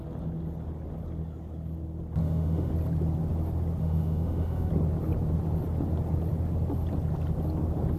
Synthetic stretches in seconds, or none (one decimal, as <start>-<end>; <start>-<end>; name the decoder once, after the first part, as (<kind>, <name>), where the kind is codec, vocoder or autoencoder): 2.2-2.7 (autoencoder, DAC-VAE); 3.8-4.7